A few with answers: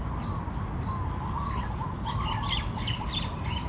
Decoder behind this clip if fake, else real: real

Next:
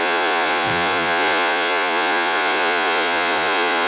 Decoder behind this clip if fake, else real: fake, vocoder, Vocos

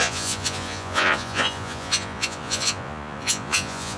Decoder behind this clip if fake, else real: fake, vocoder, Vocos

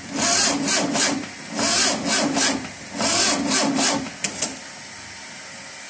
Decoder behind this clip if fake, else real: real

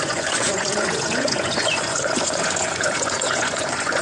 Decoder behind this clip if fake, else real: fake, vocoder, Vocos